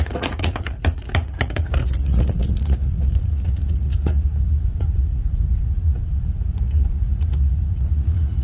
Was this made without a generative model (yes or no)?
no